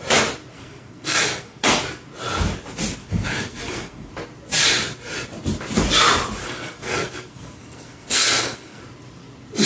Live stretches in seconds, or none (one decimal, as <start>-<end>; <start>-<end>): 0.0-0.5; 1.8-3.0; 4.1-6.4; 8.8-9.7